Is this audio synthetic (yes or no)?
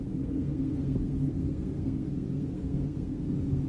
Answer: yes